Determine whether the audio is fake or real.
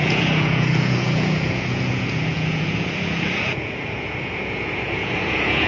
fake